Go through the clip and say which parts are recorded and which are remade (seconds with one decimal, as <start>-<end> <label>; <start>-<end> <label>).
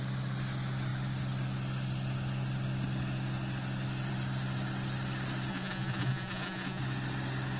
0.0-5.5 recorded; 5.5-6.8 remade; 6.8-7.6 recorded